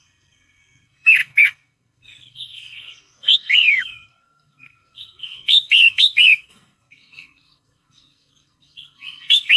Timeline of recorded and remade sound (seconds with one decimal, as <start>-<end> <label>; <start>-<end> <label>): 0.0-9.6 remade